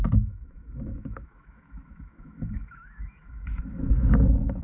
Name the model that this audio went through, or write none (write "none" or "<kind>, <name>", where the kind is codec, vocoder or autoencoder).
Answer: autoencoder, DAC-VAE